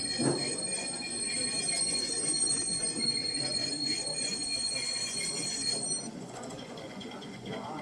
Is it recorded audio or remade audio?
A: remade